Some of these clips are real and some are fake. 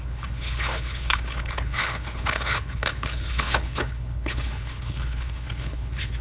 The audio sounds fake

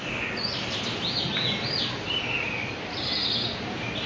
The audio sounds real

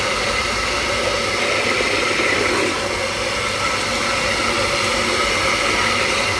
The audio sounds real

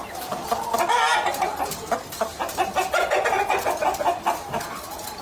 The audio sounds real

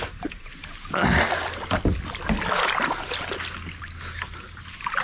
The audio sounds real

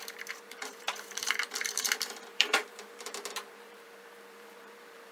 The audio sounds fake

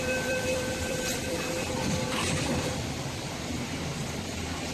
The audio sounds fake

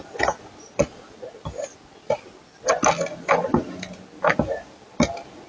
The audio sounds real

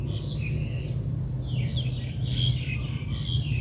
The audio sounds real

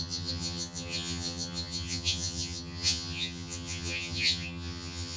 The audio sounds fake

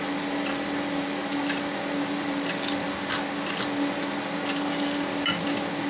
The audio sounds real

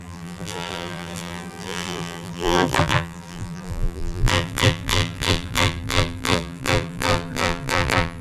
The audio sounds fake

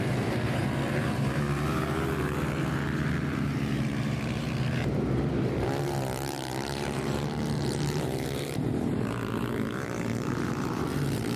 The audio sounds fake